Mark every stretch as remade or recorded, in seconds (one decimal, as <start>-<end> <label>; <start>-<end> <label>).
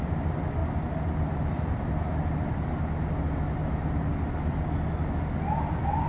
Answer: 0.0-6.1 recorded